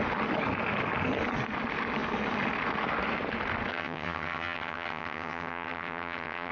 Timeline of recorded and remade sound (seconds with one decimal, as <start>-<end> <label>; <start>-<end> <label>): 0.0-3.7 recorded; 3.7-6.5 remade